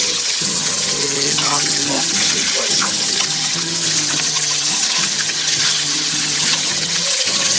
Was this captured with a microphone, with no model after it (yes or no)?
no